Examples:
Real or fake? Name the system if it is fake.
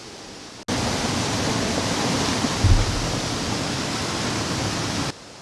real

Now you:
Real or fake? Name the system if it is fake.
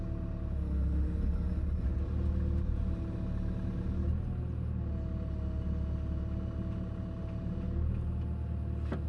real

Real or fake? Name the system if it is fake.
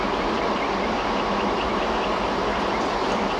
real